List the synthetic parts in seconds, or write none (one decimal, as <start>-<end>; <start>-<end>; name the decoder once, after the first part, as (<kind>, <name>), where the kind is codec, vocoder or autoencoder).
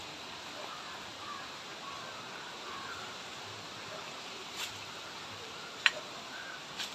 0.0-1.7 (vocoder, BigVGAN v2); 2.4-6.9